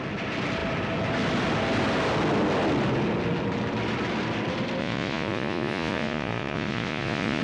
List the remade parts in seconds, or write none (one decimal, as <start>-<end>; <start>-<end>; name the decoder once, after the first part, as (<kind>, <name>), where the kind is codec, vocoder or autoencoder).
4.8-7.4 (vocoder, Vocos)